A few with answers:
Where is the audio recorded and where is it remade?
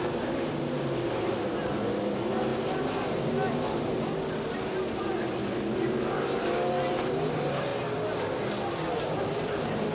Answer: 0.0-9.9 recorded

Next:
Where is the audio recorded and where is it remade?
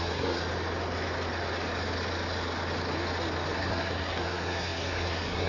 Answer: 0.0-0.4 remade; 0.4-3.5 recorded; 3.5-5.5 remade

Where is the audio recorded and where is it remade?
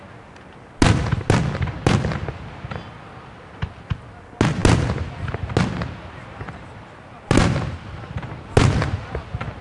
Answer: 0.0-9.6 recorded